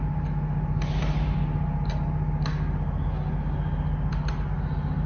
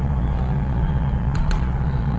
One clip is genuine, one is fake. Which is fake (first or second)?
second